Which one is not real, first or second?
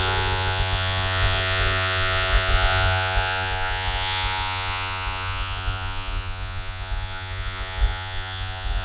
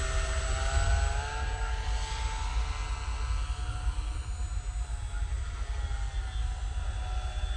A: first